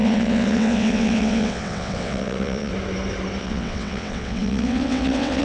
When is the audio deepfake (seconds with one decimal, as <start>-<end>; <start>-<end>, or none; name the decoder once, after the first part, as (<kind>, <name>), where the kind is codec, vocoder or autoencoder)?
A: 0.0-2.7 (vocoder, WaveNeXt); 3.4-5.4